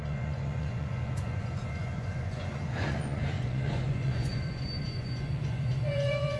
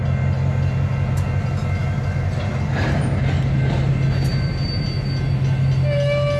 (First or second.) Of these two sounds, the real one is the second